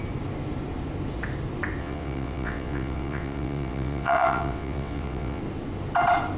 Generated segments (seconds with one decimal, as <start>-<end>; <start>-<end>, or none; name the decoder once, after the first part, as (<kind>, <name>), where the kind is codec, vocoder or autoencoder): 1.8-5.4 (vocoder, WaveNeXt)